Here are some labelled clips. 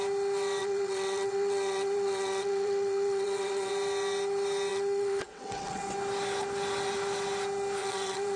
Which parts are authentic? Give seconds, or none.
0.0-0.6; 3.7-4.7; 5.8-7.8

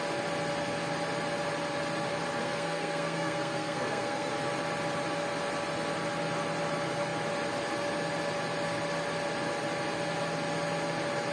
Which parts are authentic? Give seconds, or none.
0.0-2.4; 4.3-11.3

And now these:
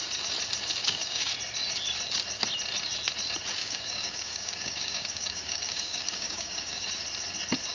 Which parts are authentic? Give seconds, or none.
0.0-0.8; 1.3-3.6; 6.9-7.7

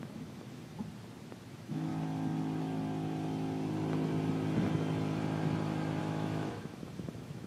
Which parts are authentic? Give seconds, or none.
0.7-1.5; 1.9-6.0

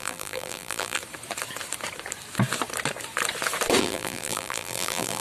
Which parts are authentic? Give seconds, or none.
1.0-3.8

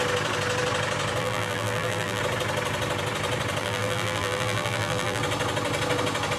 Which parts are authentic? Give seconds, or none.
0.0-1.2; 2.2-3.6; 5.2-6.4

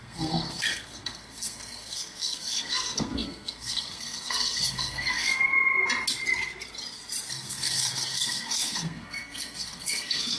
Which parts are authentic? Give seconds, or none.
5.5-7.3

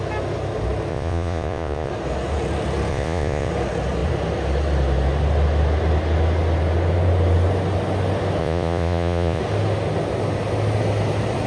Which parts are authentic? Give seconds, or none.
0.0-0.9; 1.9-2.9; 3.5-8.4; 9.4-11.5